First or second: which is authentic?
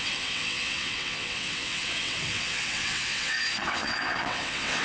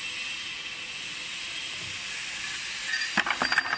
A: second